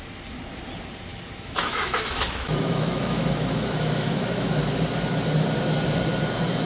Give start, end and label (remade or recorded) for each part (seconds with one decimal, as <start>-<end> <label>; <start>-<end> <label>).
0.0-1.1 recorded; 1.1-4.6 remade; 4.6-6.6 recorded